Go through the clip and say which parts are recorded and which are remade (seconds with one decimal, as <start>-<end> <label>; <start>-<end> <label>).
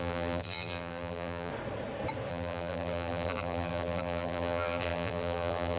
0.0-1.5 remade; 1.5-2.3 recorded; 2.3-5.8 remade